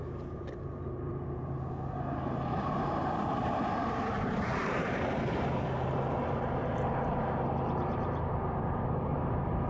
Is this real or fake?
fake